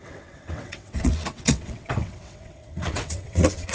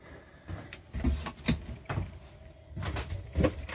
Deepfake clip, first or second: first